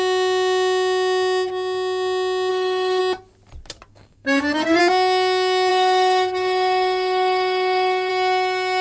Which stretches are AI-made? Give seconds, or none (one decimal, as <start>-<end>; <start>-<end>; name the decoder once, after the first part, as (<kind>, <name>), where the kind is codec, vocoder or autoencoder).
2.5-3.0 (codec, SNAC); 3.9-4.8; 5.7-8.1